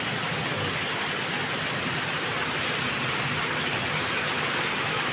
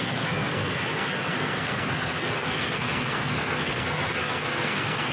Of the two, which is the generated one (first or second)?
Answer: second